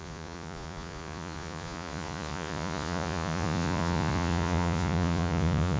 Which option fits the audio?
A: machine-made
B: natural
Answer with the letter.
A